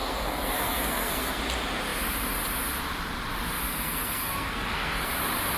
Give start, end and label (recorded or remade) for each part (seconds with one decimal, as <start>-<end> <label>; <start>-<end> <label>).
0.0-1.4 remade; 1.4-3.7 recorded; 3.7-5.1 remade; 5.1-5.6 recorded